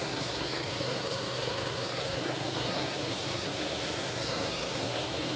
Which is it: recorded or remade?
remade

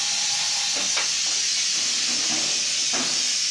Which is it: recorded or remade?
recorded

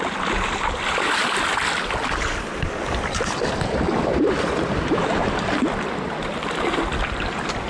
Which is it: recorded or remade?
recorded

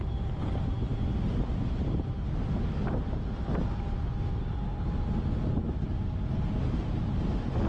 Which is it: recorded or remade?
recorded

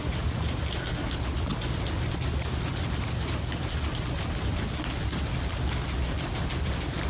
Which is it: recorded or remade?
recorded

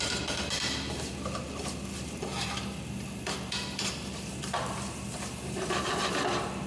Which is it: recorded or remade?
remade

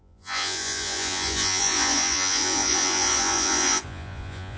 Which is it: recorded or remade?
remade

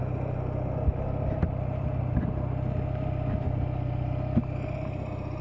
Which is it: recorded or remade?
recorded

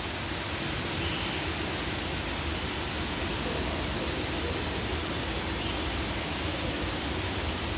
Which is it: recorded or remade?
recorded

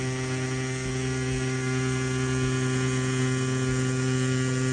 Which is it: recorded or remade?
recorded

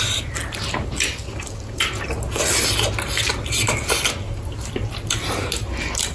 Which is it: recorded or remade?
recorded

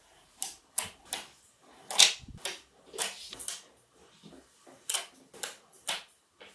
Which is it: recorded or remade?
recorded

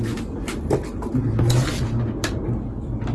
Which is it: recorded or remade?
recorded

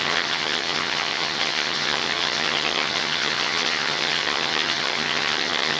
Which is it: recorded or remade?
remade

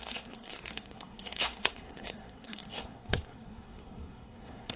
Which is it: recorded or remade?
remade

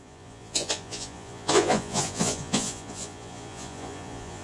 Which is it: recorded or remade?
remade